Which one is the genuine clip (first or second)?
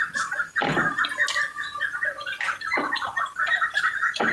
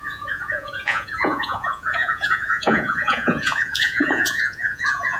first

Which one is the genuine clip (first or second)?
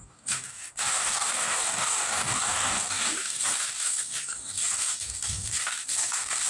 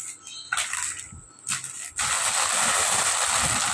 second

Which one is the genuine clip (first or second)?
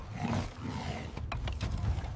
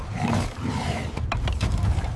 first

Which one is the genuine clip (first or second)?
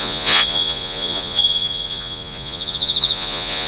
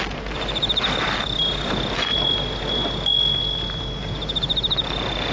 second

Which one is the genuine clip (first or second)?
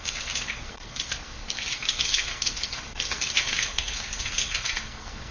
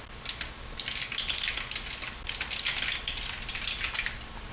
second